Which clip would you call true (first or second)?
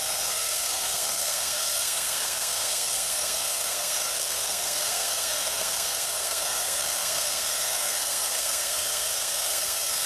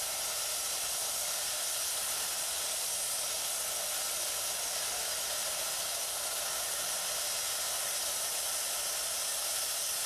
second